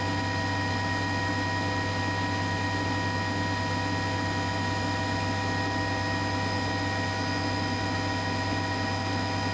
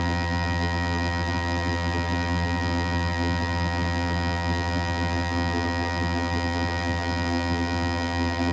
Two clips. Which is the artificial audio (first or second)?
second